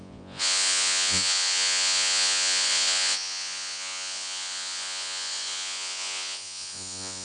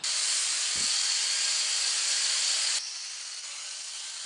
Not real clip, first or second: first